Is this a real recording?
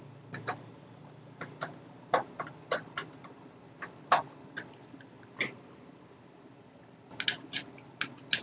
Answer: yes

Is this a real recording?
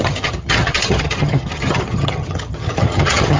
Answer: no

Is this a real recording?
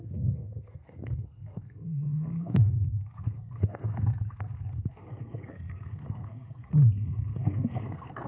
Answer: no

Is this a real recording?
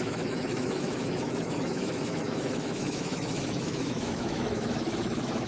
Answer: no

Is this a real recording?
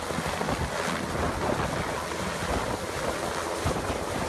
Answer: yes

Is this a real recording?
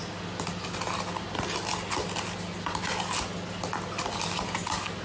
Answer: yes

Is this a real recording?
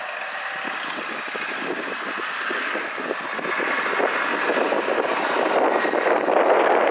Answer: yes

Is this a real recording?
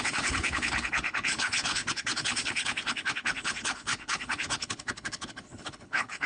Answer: no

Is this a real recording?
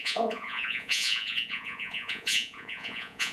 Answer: no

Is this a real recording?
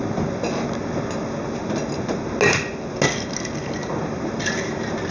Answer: yes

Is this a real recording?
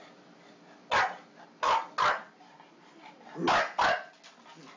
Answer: yes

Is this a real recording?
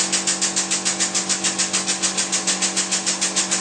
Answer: yes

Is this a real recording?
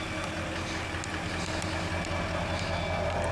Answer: yes